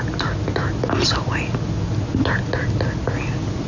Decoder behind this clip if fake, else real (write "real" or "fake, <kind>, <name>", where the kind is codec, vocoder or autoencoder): real